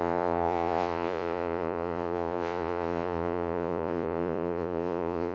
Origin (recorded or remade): remade